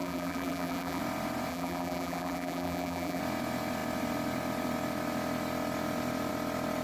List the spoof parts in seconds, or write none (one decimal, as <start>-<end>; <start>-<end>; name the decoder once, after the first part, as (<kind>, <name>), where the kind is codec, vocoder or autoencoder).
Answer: 0.0-1.0 (vocoder, BigVGAN v2); 1.5-3.2